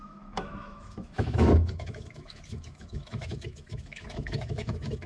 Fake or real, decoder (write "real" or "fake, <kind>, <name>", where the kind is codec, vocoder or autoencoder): fake, autoencoder, DAC-VAE